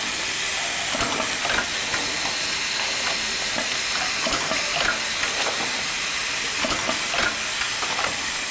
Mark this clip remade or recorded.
recorded